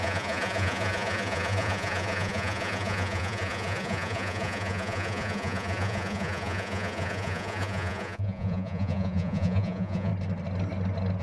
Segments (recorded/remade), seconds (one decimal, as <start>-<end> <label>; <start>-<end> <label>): 0.0-10.1 remade; 10.1-11.2 recorded